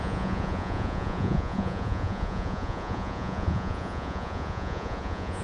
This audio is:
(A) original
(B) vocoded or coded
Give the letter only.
B